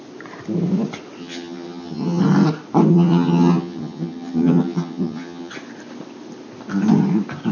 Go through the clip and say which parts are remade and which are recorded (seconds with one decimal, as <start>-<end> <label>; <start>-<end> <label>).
0.0-1.2 recorded; 1.2-2.2 remade; 2.2-2.9 recorded; 2.9-5.5 remade; 5.5-7.5 recorded